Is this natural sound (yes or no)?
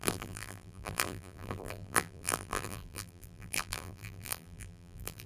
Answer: no